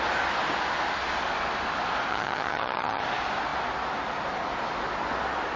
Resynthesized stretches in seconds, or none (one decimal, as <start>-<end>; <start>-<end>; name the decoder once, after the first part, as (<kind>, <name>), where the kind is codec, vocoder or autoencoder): 2.1-3.0 (vocoder, HiFi-GAN)

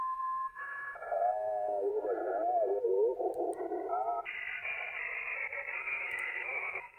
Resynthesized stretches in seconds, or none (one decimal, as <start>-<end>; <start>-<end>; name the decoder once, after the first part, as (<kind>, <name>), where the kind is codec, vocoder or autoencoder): 0.0-1.9 (autoencoder, DAC-VAE); 5.8-7.0